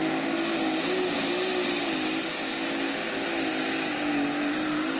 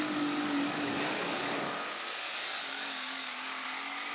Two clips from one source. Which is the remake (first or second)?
second